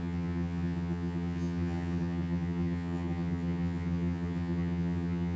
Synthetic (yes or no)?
yes